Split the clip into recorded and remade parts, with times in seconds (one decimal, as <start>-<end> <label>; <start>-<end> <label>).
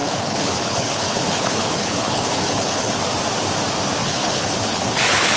0.0-3.0 remade; 3.0-4.0 recorded; 4.0-5.4 remade